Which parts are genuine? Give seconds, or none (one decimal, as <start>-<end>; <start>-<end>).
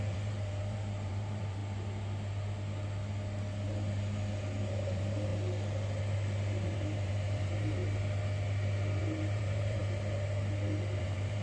1.6-4.6; 5.3-6.7; 7.8-9.0; 9.8-11.0